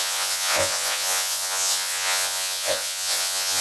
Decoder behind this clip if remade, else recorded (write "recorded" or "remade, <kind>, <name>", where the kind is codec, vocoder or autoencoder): remade, vocoder, Vocos